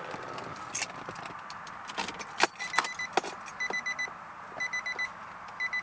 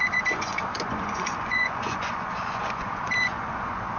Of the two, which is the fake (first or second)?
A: second